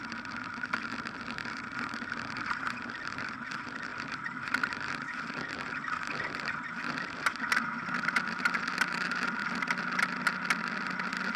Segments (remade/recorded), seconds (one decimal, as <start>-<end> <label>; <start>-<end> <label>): 0.0-11.4 recorded